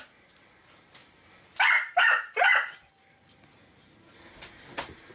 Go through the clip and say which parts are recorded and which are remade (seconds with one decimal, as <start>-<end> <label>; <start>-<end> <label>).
0.0-1.0 recorded; 1.0-3.4 remade; 3.4-5.1 recorded